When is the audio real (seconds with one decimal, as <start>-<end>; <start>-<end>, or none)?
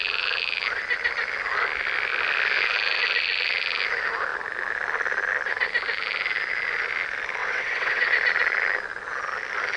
0.0-7.4; 8.1-9.8